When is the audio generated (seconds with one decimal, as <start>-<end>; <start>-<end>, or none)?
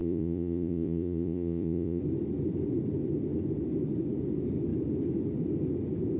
0.0-2.0